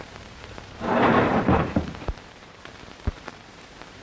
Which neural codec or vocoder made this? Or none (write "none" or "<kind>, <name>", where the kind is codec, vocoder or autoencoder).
vocoder, BigVGAN v2